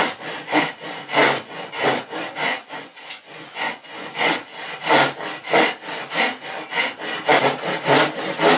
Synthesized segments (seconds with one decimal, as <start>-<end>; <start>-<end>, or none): 0.0-4.5